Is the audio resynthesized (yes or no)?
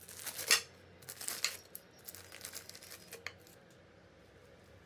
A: no